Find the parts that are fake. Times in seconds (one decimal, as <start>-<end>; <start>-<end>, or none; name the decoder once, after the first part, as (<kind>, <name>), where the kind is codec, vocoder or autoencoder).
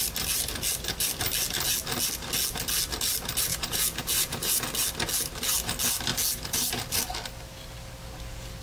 3.5-4.6 (vocoder, Vocos)